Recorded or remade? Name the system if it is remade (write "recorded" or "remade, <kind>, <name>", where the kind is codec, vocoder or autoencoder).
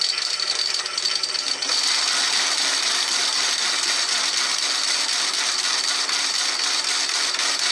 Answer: recorded